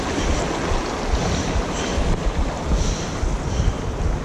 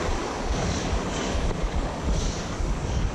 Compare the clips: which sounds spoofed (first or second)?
second